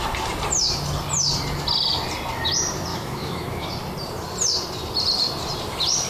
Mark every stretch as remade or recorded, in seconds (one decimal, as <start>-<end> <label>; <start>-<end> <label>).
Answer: 0.0-2.9 recorded; 2.9-3.7 remade; 3.7-6.1 recorded